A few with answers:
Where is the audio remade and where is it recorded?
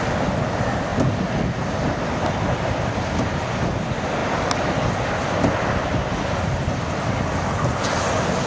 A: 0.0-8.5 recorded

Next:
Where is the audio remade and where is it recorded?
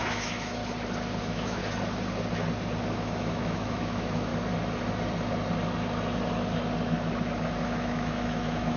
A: 0.0-0.6 remade; 0.6-1.2 recorded; 1.2-1.6 remade; 1.6-2.9 recorded; 2.9-4.3 remade; 4.3-7.6 recorded; 7.6-8.8 remade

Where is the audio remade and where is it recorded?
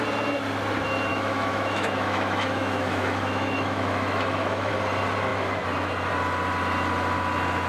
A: 0.0-1.1 recorded; 1.1-4.7 remade; 4.7-7.7 recorded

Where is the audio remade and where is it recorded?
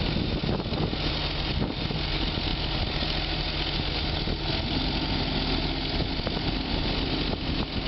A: 0.0-7.9 recorded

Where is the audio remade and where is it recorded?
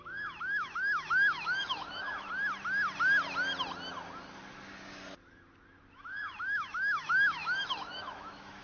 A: 0.0-2.3 remade; 2.3-5.9 recorded; 5.9-8.6 remade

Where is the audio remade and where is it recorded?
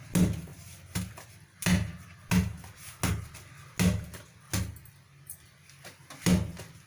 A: 0.0-6.9 recorded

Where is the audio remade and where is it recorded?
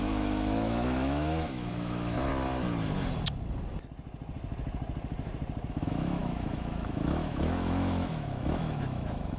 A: 0.0-2.3 remade; 2.3-5.7 recorded; 5.7-9.4 remade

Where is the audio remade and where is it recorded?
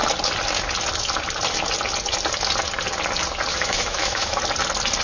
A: 0.0-3.5 recorded; 3.5-4.4 remade; 4.4-5.0 recorded